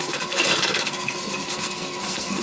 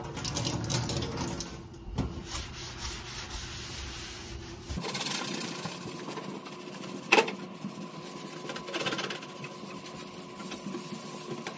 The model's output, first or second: first